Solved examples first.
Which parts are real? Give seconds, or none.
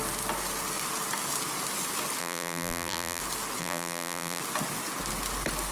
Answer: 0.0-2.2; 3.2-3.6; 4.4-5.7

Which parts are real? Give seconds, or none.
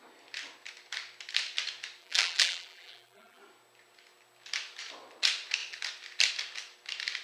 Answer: 0.0-2.0; 3.4-7.2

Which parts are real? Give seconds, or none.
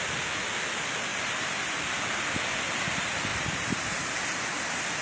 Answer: 0.0-1.1; 2.0-3.3; 4.0-5.0